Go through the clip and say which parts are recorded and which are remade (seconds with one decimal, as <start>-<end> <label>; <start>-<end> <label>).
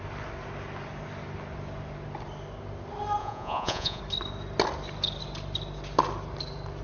0.0-3.2 recorded; 3.2-4.0 remade; 4.0-6.8 recorded